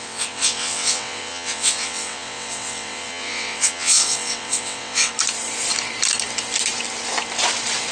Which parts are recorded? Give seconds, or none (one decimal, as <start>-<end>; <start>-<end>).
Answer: 5.1-7.9